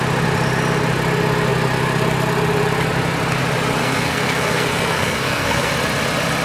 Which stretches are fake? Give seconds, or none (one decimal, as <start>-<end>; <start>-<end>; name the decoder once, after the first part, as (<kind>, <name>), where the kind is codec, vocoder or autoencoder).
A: 3.8-5.7 (codec, SNAC)